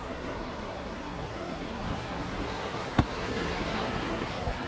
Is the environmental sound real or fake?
fake